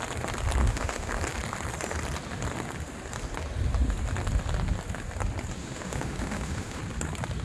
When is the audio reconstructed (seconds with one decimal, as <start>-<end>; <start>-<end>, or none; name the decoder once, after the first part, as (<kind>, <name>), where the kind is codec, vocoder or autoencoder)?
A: 0.6-1.1 (autoencoder, DAC-VAE); 5.6-6.8